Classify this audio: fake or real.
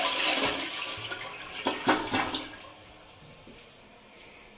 real